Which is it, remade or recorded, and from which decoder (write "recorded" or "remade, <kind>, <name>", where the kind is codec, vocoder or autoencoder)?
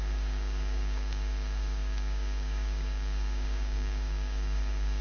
remade, codec, DAC